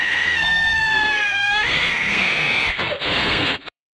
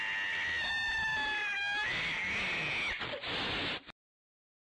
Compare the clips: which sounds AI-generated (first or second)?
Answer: first